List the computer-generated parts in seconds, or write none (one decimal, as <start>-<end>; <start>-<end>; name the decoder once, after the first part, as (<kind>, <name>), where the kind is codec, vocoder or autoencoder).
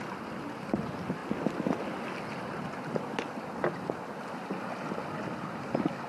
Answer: none